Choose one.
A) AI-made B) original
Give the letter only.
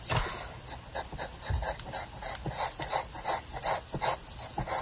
B